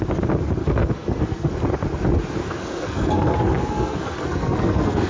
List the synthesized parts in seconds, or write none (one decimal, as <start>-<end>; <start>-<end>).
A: 0.6-1.5; 2.4-5.1